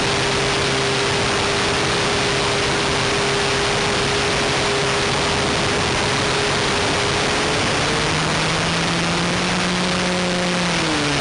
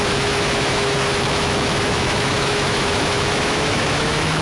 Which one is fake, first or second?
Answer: second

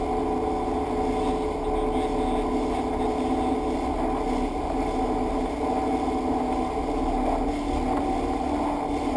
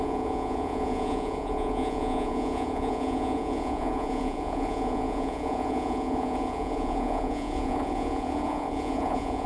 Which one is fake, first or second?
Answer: second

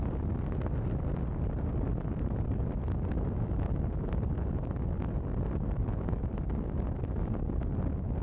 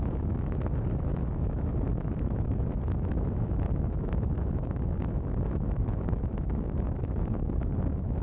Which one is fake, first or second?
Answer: second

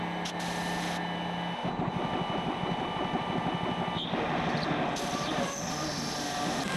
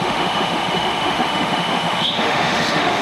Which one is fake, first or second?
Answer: second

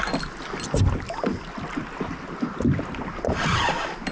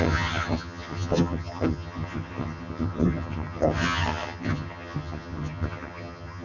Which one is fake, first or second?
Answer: second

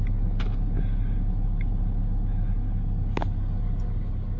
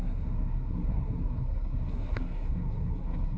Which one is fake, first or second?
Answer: second